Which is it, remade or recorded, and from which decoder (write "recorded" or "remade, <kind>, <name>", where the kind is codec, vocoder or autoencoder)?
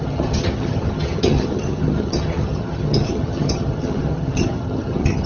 remade, vocoder, HiFi-GAN